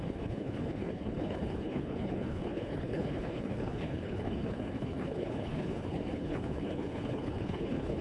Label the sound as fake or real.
fake